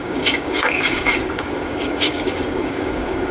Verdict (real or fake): fake